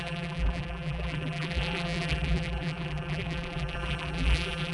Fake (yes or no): yes